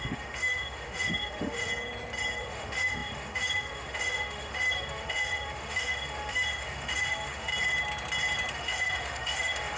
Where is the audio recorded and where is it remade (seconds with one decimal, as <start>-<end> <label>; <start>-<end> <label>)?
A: 0.0-1.7 remade; 1.7-2.4 recorded; 2.4-7.5 remade; 7.5-8.5 recorded; 8.5-9.8 remade